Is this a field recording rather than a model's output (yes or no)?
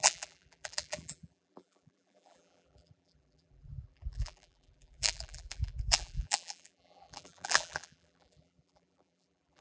no